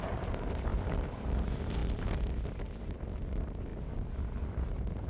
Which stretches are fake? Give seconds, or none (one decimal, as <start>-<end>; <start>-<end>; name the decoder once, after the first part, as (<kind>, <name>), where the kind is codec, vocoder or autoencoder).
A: 0.7-1.3 (vocoder, BigVGAN v2); 1.8-2.8; 3.7-5.1